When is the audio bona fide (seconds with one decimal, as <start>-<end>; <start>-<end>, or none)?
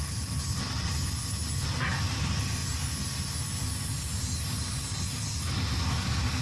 0.0-6.4